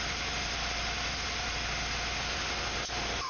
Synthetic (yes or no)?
no